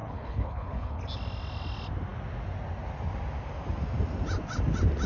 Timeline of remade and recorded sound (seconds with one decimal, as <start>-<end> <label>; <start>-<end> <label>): 0.0-1.0 remade; 1.0-5.1 recorded